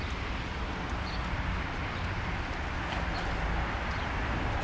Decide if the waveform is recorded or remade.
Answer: recorded